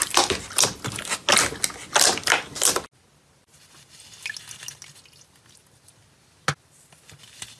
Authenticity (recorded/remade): recorded